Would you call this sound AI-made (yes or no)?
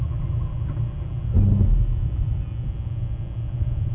no